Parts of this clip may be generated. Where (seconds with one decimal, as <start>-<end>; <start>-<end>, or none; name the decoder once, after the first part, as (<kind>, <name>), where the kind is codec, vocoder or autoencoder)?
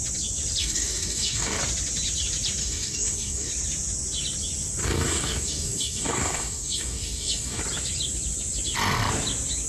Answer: 0.6-1.6 (codec, DAC); 2.6-3.5; 4.8-7.6